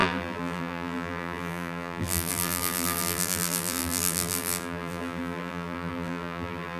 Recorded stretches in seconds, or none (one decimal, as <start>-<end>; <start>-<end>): none